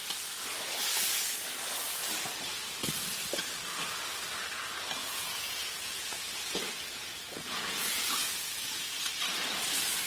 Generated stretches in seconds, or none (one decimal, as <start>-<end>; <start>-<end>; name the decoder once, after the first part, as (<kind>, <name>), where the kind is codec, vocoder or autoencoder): 5.0-9.0 (vocoder, Vocos)